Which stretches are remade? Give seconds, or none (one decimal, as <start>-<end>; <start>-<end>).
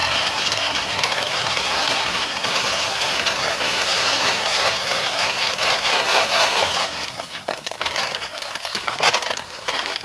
0.0-10.0